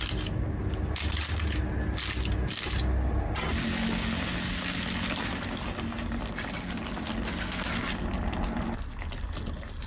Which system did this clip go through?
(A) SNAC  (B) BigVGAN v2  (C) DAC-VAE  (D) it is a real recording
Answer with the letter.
D